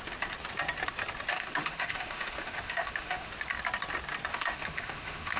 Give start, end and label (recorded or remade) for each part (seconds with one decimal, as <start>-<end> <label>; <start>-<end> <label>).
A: 0.0-1.3 recorded; 1.3-3.3 remade; 3.3-4.3 recorded; 4.3-5.4 remade